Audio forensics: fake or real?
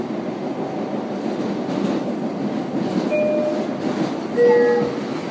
real